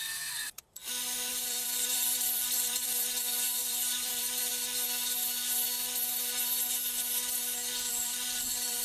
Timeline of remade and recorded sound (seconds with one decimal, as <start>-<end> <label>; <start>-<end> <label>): 0.0-0.8 remade; 0.8-1.3 recorded; 1.3-4.5 remade; 4.5-7.9 recorded; 7.9-8.8 remade